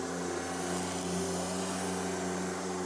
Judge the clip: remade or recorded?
recorded